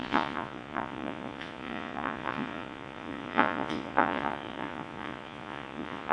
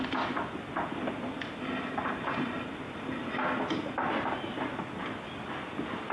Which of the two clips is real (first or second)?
second